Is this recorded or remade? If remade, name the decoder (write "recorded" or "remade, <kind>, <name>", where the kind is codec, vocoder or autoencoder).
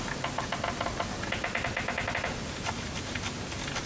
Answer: recorded